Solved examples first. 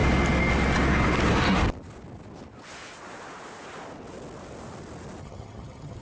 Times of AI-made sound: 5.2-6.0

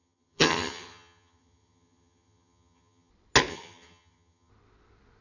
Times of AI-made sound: 0.0-3.1; 3.5-4.5

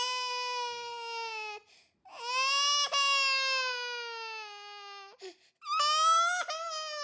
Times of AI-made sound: none